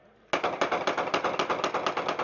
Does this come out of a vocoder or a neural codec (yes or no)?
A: no